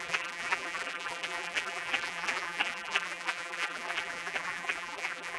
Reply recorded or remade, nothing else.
remade